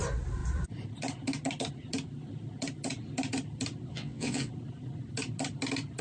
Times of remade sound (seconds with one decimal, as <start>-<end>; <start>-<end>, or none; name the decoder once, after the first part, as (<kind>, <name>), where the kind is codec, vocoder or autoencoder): 3.9-4.5 (vocoder, WaveNeXt)